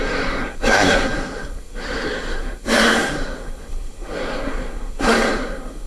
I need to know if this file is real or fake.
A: fake